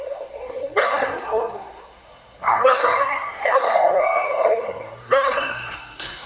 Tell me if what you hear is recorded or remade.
remade